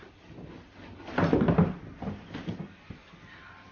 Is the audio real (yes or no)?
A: yes